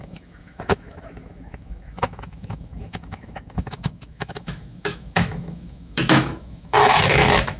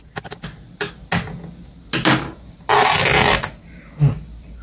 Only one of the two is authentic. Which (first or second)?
second